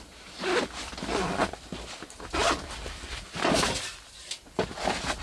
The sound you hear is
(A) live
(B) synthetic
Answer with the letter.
A